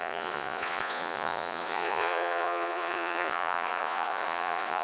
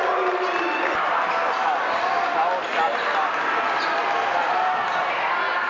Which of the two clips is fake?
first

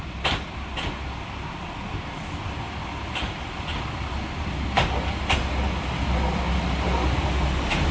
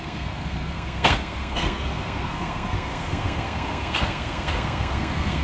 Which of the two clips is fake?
second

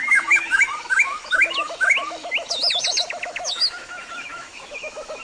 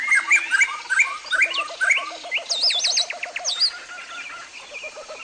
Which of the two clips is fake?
first